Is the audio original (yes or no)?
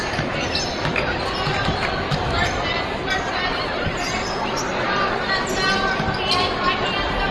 yes